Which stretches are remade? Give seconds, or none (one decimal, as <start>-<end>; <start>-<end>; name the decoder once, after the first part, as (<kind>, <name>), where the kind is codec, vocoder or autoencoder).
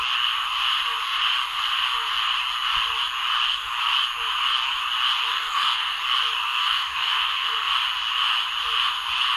5.3-6.0 (codec, SNAC); 6.4-7.7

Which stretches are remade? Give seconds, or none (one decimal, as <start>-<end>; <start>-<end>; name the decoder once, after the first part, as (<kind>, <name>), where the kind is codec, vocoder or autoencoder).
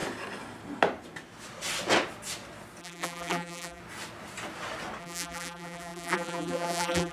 2.8-3.8 (vocoder, BigVGAN v2); 5.0-7.1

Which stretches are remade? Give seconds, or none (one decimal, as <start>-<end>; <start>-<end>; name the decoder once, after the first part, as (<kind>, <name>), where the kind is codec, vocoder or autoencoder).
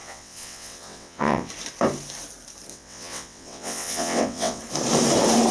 0.0-1.5 (vocoder, WaveNeXt); 2.7-4.6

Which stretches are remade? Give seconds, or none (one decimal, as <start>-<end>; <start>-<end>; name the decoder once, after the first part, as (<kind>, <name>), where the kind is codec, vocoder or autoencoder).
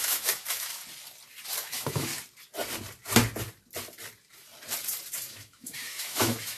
0.0-0.8 (autoencoder, DAC-VAE); 1.7-2.1; 5.3-6.6